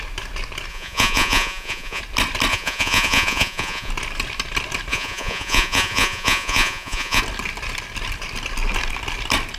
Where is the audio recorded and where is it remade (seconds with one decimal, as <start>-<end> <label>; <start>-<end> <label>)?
0.0-0.7 recorded; 0.7-2.0 remade; 2.0-2.5 recorded; 2.5-3.9 remade; 3.9-4.9 recorded; 4.9-7.2 remade; 7.2-9.6 recorded